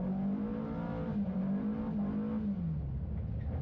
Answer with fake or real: real